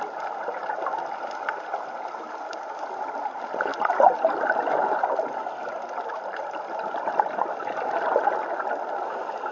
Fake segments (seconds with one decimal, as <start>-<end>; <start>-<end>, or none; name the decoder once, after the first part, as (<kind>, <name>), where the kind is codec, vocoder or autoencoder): none